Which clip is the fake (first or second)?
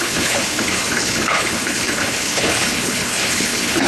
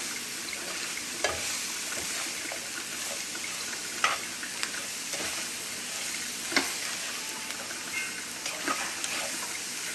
first